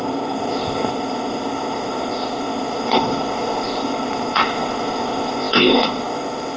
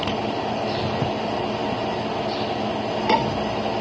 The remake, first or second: first